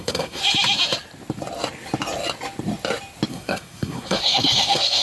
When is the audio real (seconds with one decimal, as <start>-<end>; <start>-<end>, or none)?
0.4-3.3